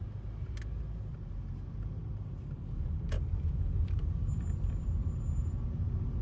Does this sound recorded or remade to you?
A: recorded